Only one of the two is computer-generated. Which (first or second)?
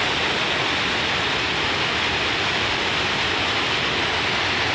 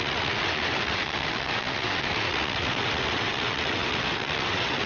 second